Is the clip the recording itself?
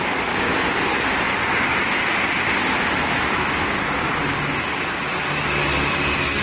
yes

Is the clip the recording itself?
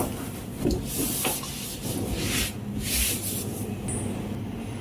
yes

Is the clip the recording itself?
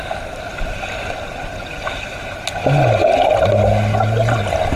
yes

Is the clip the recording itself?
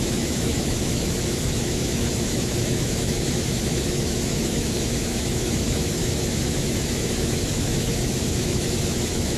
no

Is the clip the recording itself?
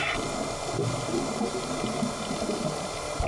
yes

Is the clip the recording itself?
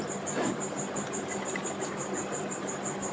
yes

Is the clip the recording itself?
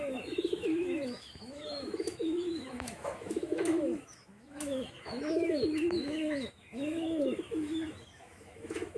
no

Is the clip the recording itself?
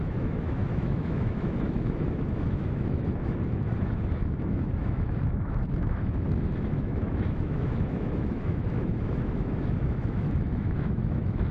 no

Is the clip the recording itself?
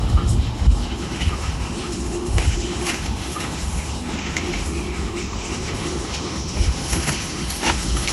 no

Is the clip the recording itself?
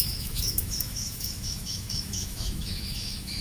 no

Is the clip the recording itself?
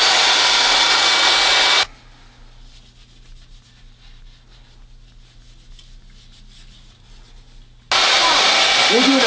yes